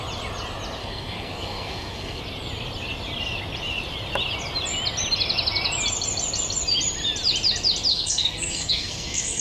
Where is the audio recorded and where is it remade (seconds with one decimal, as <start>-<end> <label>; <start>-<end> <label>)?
0.0-0.8 recorded; 0.8-2.2 remade; 2.2-7.9 recorded; 7.9-9.4 remade